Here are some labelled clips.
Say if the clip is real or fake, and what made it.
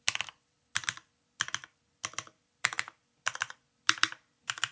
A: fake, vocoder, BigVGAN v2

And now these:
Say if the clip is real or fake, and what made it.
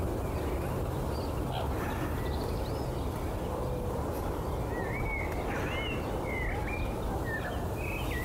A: real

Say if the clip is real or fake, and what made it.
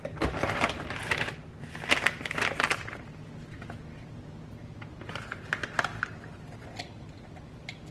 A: real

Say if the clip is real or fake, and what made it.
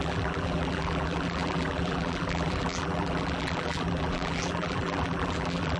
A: fake, vocoder, BigVGAN v2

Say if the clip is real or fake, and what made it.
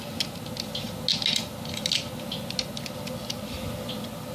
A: real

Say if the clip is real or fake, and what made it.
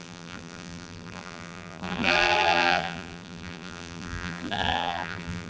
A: fake, vocoder, BigVGAN v2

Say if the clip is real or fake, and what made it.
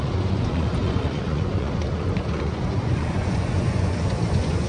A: fake, vocoder, Vocos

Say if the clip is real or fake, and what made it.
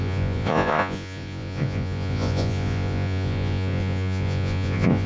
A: fake, vocoder, Vocos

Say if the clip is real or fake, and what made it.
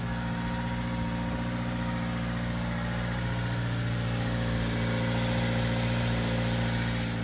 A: real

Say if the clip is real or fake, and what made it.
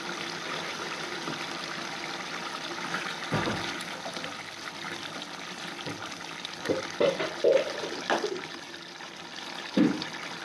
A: fake, vocoder, BigVGAN v2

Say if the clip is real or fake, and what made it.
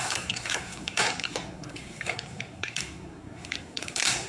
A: fake, codec, SNAC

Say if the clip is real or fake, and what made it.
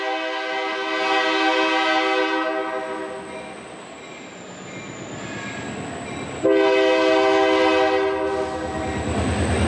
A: real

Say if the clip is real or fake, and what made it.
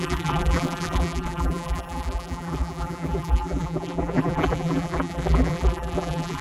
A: fake, vocoder, BigVGAN v2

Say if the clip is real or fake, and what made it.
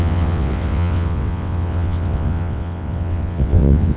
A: fake, vocoder, WaveNeXt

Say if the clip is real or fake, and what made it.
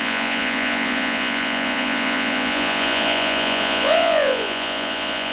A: fake, vocoder, Vocos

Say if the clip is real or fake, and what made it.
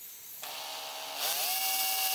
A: real